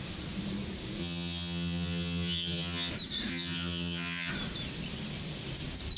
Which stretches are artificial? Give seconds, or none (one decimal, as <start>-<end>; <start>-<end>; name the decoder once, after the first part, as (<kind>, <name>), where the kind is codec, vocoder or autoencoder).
1.0-2.9 (vocoder, HiFi-GAN); 3.3-4.3